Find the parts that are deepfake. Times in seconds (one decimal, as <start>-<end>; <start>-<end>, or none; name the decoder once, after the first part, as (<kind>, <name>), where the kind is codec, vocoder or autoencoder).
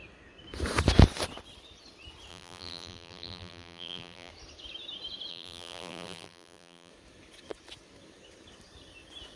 2.3-4.3 (vocoder, BigVGAN v2); 5.3-6.9